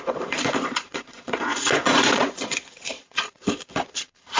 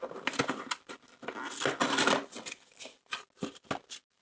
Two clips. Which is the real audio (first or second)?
second